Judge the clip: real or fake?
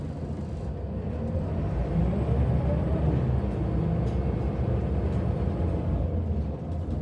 real